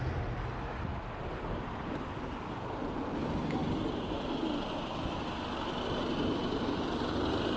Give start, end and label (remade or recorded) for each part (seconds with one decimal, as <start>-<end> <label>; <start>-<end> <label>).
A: 0.0-7.6 recorded

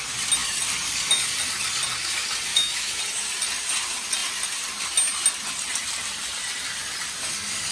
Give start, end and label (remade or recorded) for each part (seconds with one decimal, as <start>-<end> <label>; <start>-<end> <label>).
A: 0.0-2.5 recorded; 2.5-3.0 remade; 3.0-7.7 recorded

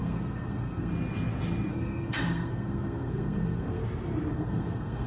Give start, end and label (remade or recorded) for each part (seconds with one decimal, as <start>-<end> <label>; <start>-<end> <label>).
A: 0.0-0.9 remade; 0.9-1.7 recorded; 1.7-3.8 remade; 3.8-4.3 recorded; 4.3-5.1 remade

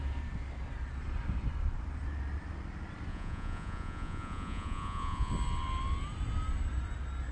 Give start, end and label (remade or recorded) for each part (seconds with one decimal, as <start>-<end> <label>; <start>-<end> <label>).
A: 0.0-3.1 recorded; 3.1-5.3 remade; 5.3-7.3 recorded

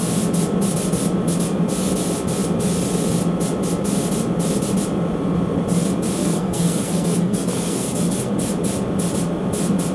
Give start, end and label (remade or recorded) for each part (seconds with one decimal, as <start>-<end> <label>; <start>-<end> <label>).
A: 0.0-6.2 recorded; 6.2-8.3 remade; 8.3-9.9 recorded

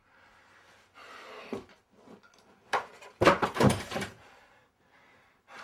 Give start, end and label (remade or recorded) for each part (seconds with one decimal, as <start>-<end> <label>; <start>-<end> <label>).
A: 0.0-1.0 remade; 1.0-2.4 recorded; 2.4-5.6 remade

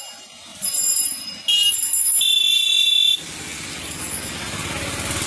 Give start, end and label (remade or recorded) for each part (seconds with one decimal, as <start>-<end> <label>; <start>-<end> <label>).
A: 0.0-0.5 recorded; 0.5-1.4 remade; 1.4-5.3 recorded